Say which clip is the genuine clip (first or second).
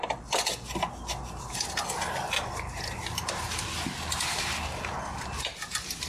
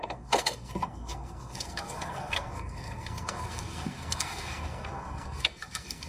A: first